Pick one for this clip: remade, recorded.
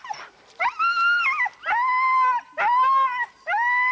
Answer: recorded